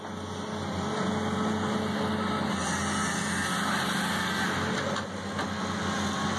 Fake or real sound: real